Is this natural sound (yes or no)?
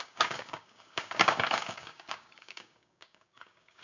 no